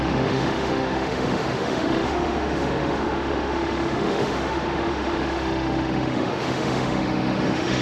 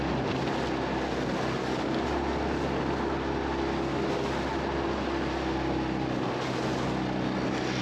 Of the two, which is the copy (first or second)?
first